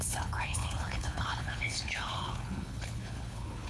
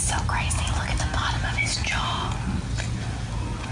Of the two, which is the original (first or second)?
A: second